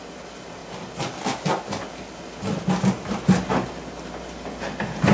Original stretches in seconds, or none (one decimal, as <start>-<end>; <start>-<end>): 0.0-5.1